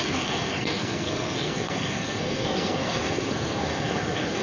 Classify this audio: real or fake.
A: fake